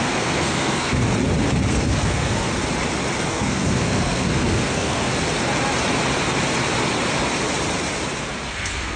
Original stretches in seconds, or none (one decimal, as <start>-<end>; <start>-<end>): 1.0-1.7; 2.5-3.3; 5.1-8.5